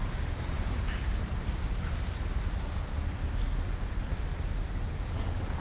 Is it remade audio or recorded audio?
recorded